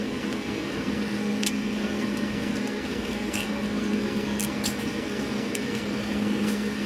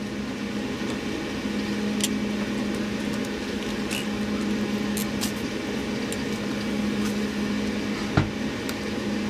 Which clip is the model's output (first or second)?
first